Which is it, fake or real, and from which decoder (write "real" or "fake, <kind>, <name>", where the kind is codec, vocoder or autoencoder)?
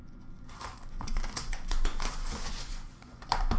fake, vocoder, Vocos